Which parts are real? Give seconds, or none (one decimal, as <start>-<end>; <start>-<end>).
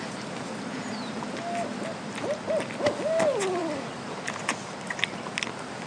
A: 0.0-5.9